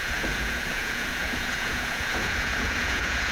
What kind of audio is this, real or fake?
fake